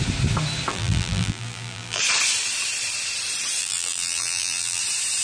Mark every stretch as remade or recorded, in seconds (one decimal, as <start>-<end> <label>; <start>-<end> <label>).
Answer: 0.0-0.7 recorded; 0.7-2.0 remade; 2.0-3.6 recorded; 3.6-4.8 remade; 4.8-5.2 recorded